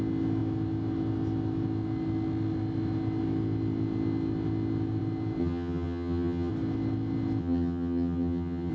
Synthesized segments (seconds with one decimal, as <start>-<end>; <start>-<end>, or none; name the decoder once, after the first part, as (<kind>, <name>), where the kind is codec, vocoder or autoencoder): 5.4-6.5 (vocoder, HiFi-GAN); 7.4-8.7